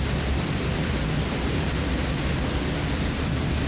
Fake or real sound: real